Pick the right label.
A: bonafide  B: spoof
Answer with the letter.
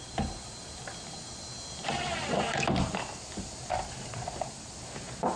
A